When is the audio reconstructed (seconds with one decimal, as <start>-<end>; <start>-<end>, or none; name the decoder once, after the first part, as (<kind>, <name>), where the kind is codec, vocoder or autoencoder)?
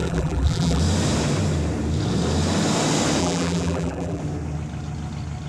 0.0-0.8 (vocoder, BigVGAN v2); 3.2-4.2